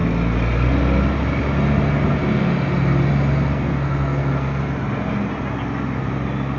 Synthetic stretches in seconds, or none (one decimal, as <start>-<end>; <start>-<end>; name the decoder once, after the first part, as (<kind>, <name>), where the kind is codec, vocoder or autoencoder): 3.5-4.6 (codec, SNAC)

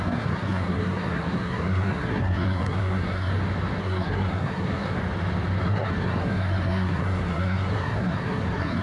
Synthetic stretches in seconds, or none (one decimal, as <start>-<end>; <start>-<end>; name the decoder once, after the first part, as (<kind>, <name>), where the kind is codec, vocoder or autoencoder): 0.0-3.3 (codec, SNAC); 3.8-5.0; 5.6-8.8

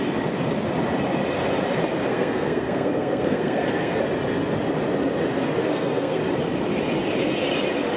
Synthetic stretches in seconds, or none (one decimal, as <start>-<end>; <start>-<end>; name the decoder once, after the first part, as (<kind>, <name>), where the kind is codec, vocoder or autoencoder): 2.1-4.0 (codec, SNAC); 5.6-6.2

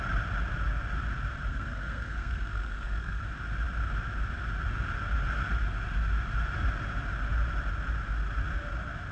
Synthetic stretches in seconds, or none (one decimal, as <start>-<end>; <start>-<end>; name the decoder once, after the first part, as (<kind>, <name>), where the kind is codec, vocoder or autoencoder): 1.5-3.2 (codec, SNAC)

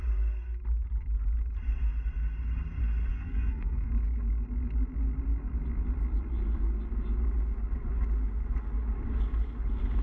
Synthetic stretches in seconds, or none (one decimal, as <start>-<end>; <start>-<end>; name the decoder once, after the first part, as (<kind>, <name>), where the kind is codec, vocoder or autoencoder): 3.1-3.9 (codec, SNAC)

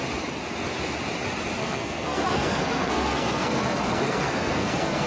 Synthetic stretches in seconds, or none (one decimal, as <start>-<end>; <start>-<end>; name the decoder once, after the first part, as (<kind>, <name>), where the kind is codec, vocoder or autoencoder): 1.6-5.1 (codec, SNAC)